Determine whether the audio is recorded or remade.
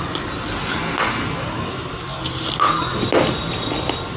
recorded